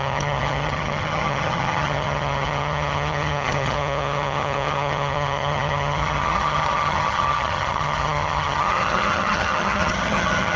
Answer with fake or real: fake